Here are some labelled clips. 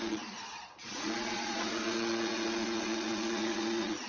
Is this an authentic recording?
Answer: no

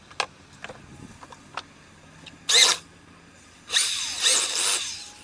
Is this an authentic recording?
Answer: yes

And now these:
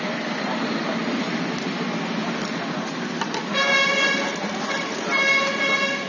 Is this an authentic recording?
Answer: yes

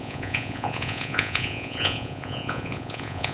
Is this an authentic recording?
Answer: no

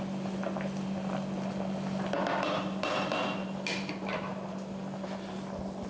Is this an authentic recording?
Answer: yes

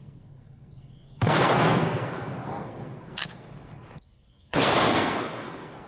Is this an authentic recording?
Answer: no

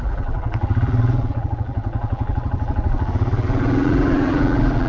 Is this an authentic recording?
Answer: no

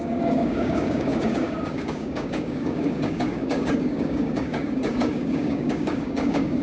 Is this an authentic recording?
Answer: no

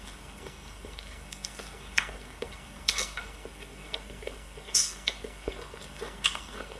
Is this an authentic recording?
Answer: no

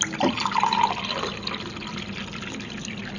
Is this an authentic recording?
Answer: yes